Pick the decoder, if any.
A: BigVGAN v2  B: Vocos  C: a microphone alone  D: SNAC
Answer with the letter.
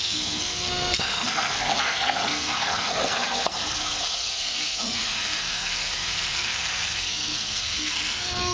D